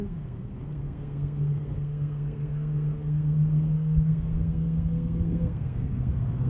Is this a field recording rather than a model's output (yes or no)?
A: no